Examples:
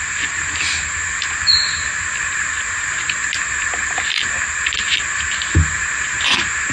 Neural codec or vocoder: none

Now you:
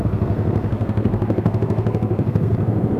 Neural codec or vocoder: codec, SNAC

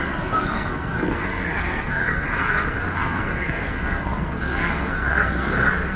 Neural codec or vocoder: codec, SNAC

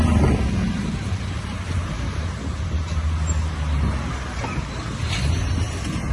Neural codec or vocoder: none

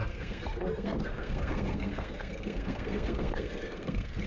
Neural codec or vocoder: codec, SNAC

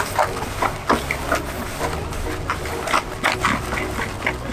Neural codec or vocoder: none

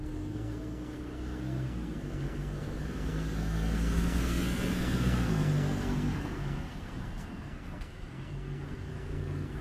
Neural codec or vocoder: codec, SNAC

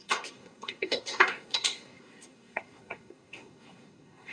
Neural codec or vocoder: codec, SNAC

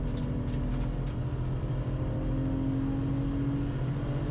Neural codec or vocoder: none